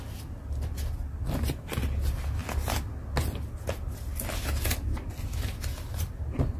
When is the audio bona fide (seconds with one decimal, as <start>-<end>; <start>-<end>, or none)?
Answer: 0.0-6.6

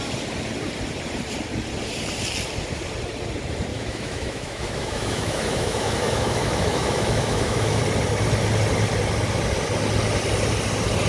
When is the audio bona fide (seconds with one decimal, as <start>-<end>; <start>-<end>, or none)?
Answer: 0.0-3.7; 7.8-11.1

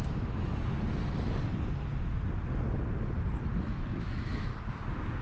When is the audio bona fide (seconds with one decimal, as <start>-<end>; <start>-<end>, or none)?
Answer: 0.5-3.6; 4.5-5.2

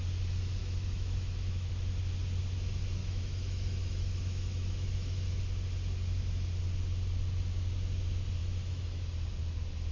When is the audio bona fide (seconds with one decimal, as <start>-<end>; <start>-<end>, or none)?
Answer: 0.0-0.6; 1.7-3.0; 5.4-8.4; 9.0-9.9

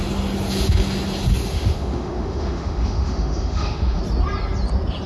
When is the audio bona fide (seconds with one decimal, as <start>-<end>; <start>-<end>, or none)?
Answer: 0.0-1.5; 4.0-5.1

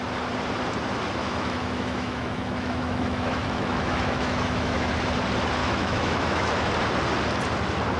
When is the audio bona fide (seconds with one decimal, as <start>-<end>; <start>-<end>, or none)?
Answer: 0.0-1.2; 4.9-5.6; 6.7-8.0